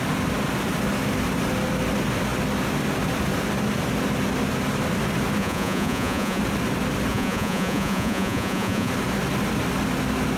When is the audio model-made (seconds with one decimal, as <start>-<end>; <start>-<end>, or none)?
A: 5.4-6.4; 7.1-8.9